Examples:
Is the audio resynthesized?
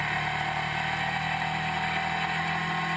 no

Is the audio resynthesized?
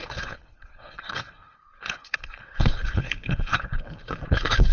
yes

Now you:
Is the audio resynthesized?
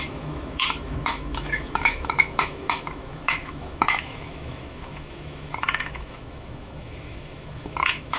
yes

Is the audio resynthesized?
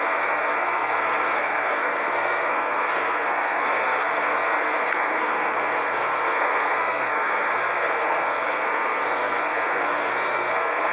yes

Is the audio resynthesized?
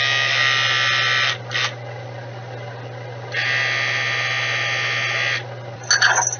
no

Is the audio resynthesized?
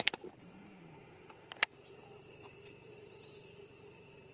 yes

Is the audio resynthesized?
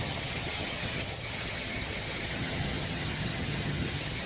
yes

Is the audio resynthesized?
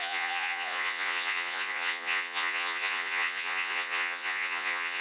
yes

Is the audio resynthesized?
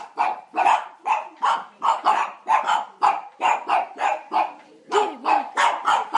no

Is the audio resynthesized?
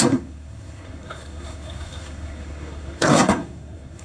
yes